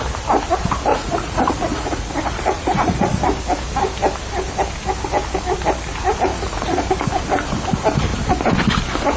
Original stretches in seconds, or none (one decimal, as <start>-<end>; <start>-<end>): 0.0-0.9; 3.2-6.3; 6.8-9.2